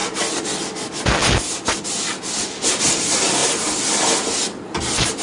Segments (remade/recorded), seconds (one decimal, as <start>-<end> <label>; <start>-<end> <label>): 0.0-5.2 recorded